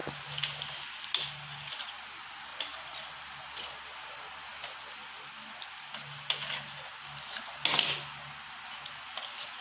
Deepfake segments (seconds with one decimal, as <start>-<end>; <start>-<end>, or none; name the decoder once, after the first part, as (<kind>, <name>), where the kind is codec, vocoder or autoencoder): 2.5-3.1 (vocoder, BigVGAN v2)

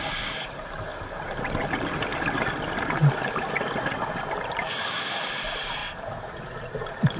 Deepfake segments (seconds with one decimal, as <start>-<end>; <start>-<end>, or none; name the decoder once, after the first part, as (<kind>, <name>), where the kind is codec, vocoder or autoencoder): 0.0-0.9 (vocoder, BigVGAN v2); 1.6-2.1; 5.0-5.8; 6.3-7.2

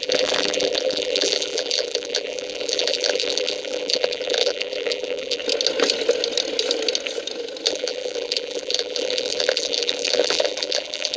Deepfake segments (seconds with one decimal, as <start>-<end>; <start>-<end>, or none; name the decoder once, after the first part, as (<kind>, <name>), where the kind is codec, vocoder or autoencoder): 0.0-5.4 (vocoder, BigVGAN v2); 7.7-11.2

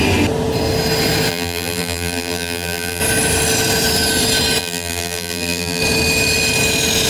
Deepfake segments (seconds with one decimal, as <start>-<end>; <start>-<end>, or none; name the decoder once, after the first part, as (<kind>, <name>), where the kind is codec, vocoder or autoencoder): 1.3-3.0 (vocoder, BigVGAN v2); 4.6-5.8

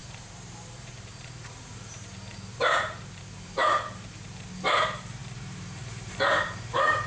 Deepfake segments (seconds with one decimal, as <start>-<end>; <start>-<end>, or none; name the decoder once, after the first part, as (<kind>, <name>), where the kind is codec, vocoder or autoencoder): 0.0-4.3 (vocoder, BigVGAN v2); 5.2-7.1